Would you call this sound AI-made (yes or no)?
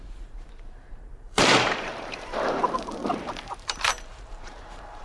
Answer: yes